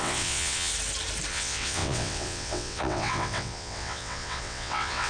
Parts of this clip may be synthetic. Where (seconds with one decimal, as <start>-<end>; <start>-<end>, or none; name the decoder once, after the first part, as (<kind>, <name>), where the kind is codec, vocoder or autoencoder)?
0.0-0.7 (vocoder, WaveNeXt); 1.3-5.1